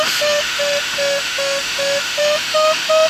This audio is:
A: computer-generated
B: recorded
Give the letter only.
A